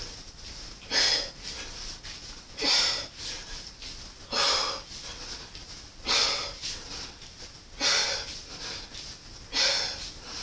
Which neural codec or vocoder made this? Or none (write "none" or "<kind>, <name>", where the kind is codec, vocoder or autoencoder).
none